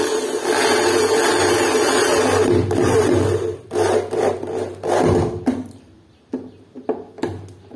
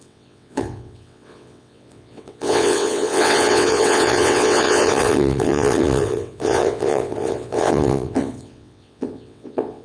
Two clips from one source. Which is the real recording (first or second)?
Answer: first